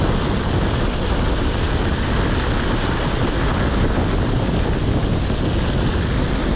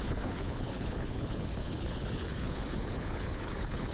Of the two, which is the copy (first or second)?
second